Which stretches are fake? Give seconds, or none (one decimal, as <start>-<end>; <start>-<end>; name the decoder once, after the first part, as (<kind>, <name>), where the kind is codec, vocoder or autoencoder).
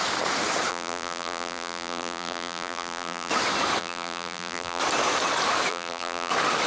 0.7-3.3 (vocoder, BigVGAN v2); 3.8-4.8; 5.7-6.3